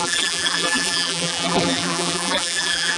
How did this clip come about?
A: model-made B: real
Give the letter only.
A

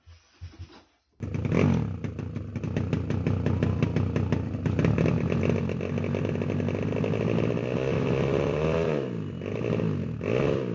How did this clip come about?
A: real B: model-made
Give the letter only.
A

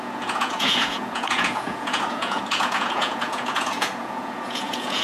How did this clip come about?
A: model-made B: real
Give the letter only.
A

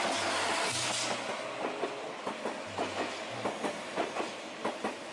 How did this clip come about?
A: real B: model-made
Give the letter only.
A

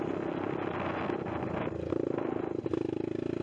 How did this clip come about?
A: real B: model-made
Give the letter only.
A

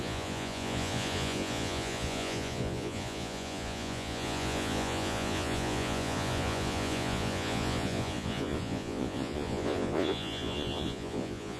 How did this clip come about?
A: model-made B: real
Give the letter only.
A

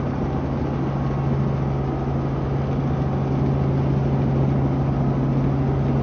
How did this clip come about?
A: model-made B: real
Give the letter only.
B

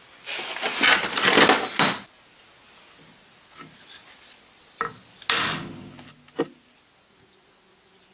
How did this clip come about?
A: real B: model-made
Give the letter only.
A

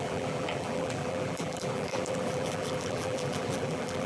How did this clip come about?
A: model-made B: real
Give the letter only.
A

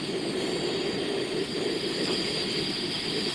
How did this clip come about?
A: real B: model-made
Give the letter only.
A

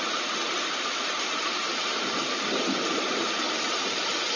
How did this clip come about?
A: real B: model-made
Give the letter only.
B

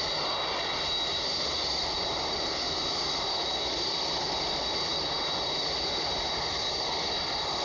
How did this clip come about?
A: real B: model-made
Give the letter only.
A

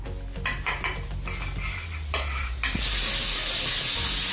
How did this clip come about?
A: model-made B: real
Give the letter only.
B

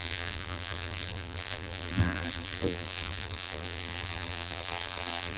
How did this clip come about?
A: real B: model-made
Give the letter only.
B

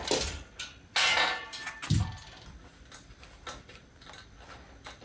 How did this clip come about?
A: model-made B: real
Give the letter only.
B